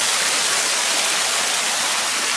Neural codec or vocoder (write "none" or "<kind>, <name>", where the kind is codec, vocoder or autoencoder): none